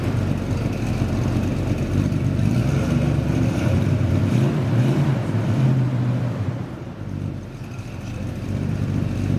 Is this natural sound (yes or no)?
no